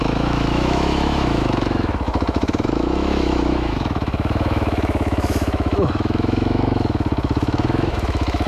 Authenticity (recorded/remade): remade